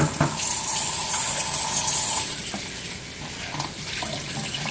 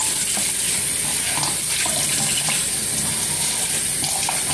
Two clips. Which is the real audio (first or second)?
second